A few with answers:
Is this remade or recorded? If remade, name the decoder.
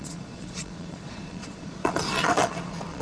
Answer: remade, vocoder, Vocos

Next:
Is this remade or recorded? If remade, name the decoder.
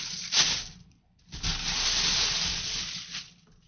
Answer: recorded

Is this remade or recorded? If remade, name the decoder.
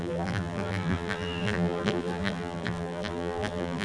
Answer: remade, vocoder, BigVGAN v2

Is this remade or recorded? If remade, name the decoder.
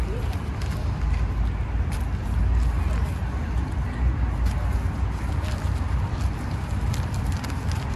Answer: recorded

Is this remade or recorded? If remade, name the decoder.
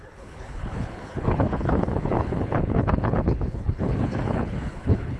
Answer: remade, codec, HILCodec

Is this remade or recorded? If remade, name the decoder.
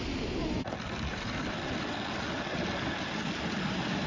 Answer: recorded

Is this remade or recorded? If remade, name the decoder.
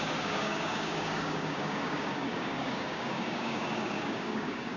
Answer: remade, codec, DAC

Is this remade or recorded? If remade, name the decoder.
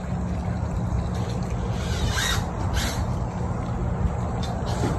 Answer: recorded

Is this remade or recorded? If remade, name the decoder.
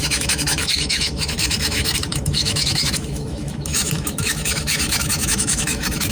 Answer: remade, autoencoder, DAC-VAE